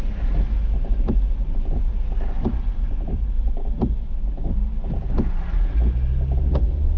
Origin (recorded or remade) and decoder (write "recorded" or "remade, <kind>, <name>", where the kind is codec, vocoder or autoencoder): recorded